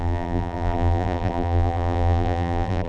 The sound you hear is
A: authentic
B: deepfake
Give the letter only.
B